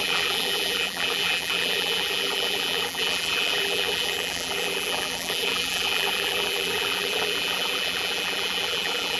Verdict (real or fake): fake